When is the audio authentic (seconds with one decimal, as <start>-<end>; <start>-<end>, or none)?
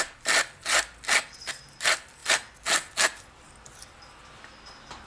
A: 0.0-5.1